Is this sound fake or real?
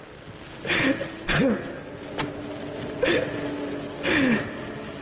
real